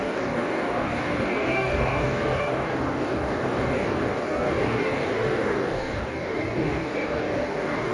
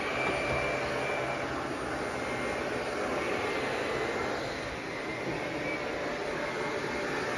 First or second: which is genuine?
second